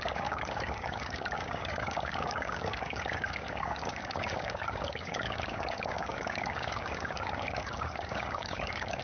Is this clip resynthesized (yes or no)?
yes